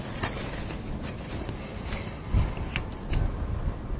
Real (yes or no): yes